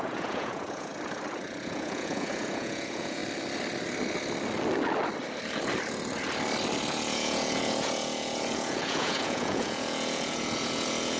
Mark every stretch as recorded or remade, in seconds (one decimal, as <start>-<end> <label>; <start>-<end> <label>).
0.0-0.9 remade; 0.9-1.6 recorded; 1.6-3.2 remade; 3.2-6.9 recorded; 6.9-11.2 remade